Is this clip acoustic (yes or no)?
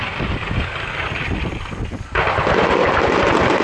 yes